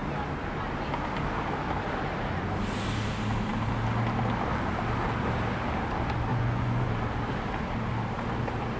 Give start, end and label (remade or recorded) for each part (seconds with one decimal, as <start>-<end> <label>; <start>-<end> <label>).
0.0-6.3 recorded; 6.3-6.9 remade; 6.9-8.8 recorded